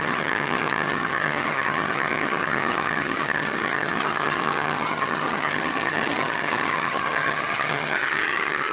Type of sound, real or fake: fake